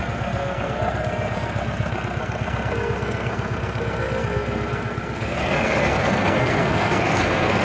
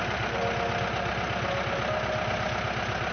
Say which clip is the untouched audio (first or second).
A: second